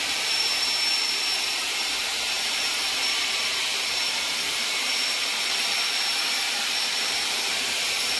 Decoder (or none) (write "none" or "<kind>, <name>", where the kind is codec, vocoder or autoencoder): vocoder, BigVGAN v2